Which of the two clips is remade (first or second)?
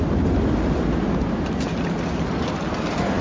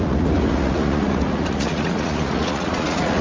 second